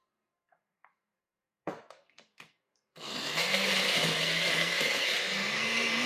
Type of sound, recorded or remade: remade